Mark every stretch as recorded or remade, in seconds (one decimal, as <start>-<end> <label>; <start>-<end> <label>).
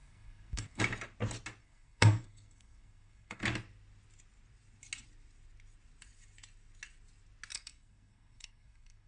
0.0-0.8 remade; 0.8-1.6 recorded; 1.6-3.4 remade; 3.4-7.5 recorded; 7.5-9.1 remade